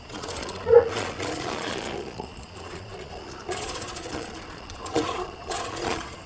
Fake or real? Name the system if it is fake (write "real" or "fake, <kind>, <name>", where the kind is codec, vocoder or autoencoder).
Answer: fake, vocoder, Vocos